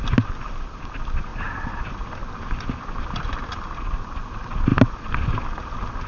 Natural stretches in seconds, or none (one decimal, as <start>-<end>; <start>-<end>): 0.0-6.1

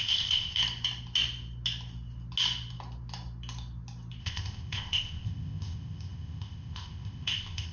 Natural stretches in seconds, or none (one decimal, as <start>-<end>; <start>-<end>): 0.6-4.2